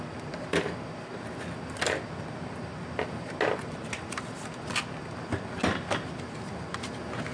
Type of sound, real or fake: real